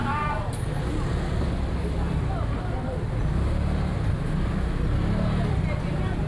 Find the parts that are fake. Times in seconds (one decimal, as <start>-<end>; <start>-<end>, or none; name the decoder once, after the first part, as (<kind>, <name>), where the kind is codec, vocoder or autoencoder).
none